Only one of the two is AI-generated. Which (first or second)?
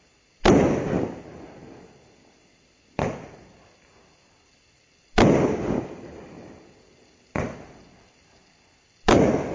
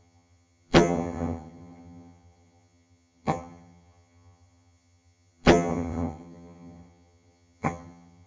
second